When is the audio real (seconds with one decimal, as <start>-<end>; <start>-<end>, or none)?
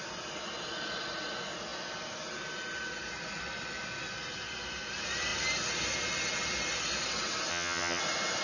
0.0-7.5; 8.0-8.4